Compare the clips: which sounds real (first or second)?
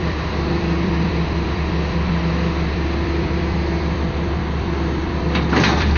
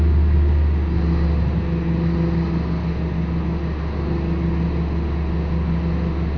second